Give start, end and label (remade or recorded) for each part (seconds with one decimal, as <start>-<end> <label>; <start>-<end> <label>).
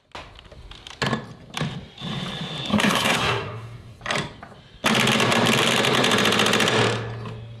0.0-2.7 recorded; 2.7-4.0 remade; 4.0-7.6 recorded